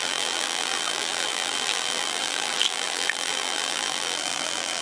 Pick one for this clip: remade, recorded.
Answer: remade